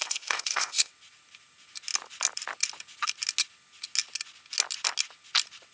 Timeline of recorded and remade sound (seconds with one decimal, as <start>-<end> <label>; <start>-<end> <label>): 0.0-0.9 remade; 0.9-5.7 recorded